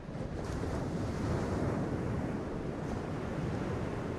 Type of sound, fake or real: real